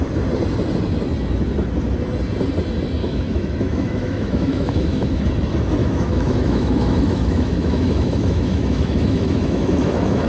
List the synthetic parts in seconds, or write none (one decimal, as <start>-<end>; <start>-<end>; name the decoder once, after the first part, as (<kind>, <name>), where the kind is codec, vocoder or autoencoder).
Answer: 3.0-5.2 (autoencoder, DAC-VAE); 5.8-10.3